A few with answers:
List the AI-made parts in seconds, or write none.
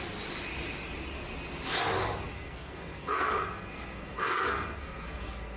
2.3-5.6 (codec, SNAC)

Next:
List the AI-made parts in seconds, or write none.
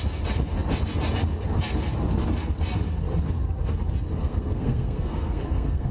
4.2-5.9 (codec, SNAC)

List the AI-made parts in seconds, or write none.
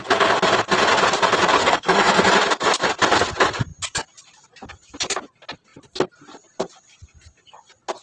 1.6-2.3 (codec, SNAC)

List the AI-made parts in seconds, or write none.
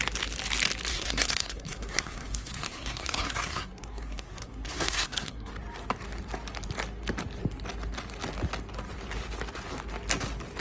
0.9-5.5 (codec, SNAC)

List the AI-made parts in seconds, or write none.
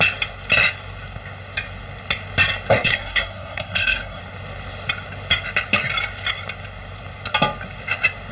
2.7-4.2 (codec, SNAC)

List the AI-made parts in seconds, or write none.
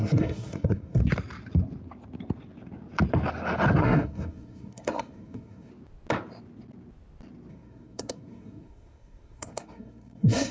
0.0-1.0 (codec, SNAC); 3.8-5.7; 7.5-10.5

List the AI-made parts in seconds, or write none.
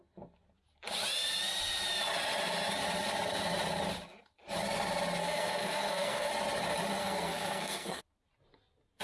5.2-6.3 (codec, SNAC); 7.0-8.0